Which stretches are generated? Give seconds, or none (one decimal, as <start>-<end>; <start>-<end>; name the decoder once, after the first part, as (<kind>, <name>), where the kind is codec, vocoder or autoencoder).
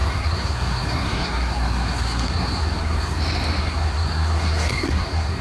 0.0-3.2 (codec, SNAC); 3.6-5.4